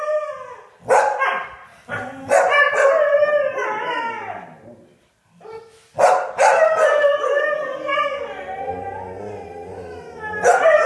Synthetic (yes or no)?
no